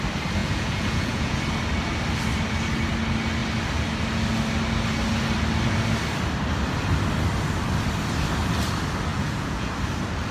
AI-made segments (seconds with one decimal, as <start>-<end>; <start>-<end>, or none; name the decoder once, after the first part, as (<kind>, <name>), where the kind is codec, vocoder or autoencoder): 0.4-1.4 (vocoder, Vocos); 9.1-9.7